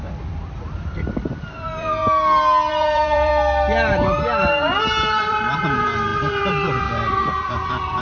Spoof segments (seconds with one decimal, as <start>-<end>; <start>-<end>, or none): 0.0-2.0; 2.7-3.3; 5.2-8.0